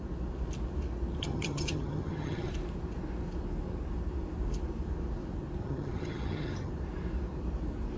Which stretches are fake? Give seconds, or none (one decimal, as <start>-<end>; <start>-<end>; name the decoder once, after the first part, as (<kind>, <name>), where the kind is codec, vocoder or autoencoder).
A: 1.2-2.5 (vocoder, HiFi-GAN); 5.6-6.7